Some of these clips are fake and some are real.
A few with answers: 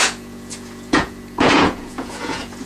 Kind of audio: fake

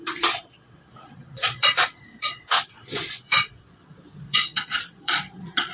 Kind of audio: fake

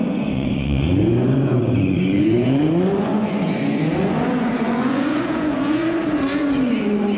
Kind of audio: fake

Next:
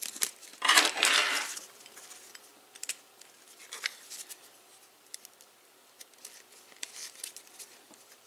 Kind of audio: real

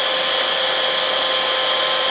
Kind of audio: real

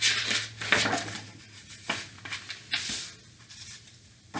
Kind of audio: real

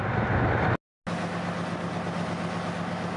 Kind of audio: real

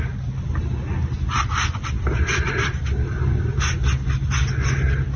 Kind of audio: real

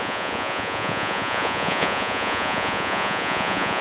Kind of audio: fake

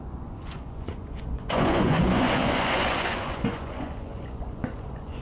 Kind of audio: fake